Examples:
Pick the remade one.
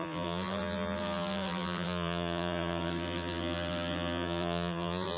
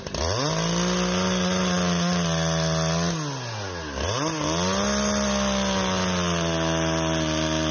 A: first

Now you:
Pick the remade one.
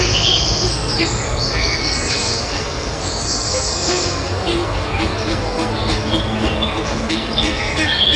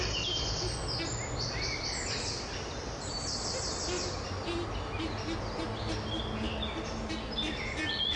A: first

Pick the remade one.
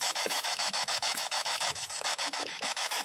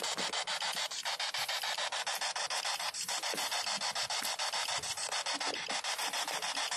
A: first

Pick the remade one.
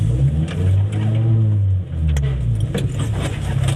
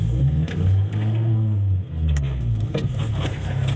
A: second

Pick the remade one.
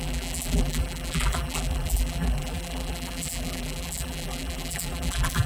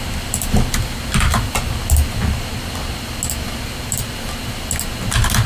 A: first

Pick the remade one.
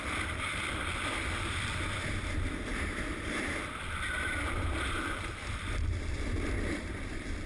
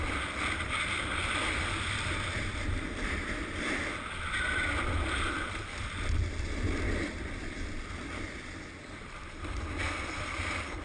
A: first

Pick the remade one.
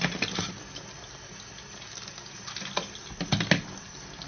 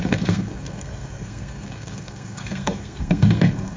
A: second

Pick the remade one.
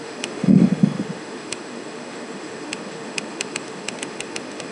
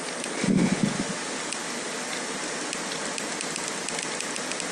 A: first